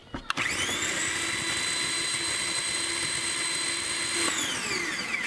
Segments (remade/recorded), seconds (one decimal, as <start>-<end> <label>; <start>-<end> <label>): 0.0-5.3 recorded